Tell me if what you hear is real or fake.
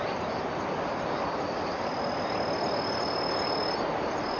real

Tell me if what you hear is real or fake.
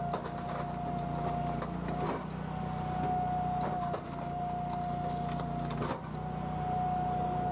real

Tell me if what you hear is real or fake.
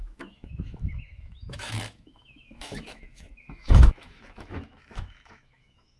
fake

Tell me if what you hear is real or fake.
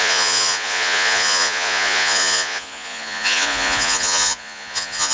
fake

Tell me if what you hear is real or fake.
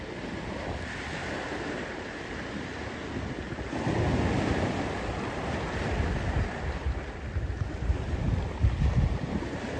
real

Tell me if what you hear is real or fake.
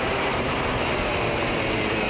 fake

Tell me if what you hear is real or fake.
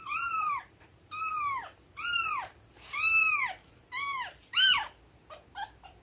fake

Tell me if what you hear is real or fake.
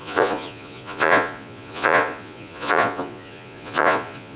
fake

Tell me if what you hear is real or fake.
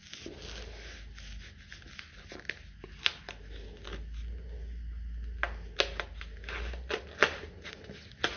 real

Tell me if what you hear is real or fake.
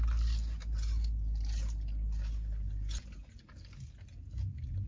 real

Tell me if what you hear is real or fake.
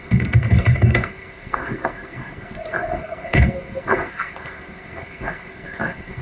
fake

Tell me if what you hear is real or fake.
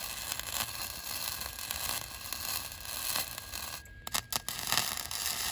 real